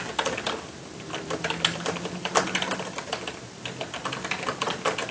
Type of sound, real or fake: real